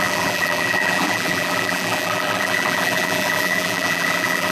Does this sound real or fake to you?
fake